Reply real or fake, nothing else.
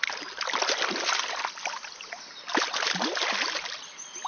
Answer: real